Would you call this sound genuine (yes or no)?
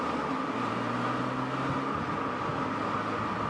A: yes